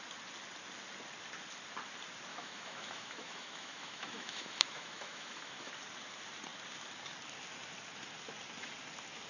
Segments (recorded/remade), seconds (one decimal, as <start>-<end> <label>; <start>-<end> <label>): 0.0-2.3 recorded; 2.3-5.7 remade; 5.7-9.3 recorded